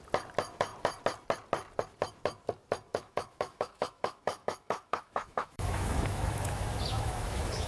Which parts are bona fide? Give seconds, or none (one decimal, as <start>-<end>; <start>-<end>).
0.0-2.9